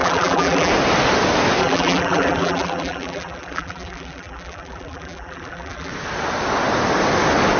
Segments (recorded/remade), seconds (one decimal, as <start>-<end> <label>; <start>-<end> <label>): 0.0-0.7 remade; 0.7-1.6 recorded; 1.6-5.9 remade; 5.9-7.6 recorded